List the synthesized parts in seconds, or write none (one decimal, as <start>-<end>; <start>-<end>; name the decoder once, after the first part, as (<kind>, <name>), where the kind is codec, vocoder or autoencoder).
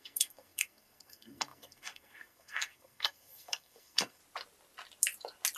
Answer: 0.0-4.2 (codec, SNAC)